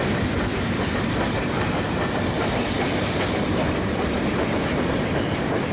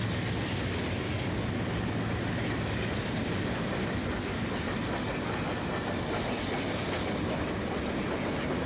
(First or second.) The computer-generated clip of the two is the first